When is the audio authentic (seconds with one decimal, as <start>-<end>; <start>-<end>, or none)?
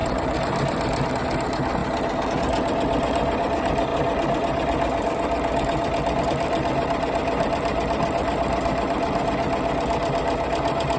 1.1-11.0